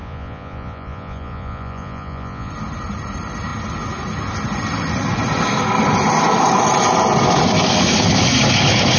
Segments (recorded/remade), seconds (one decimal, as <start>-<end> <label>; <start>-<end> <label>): 0.0-2.5 remade; 2.5-9.0 recorded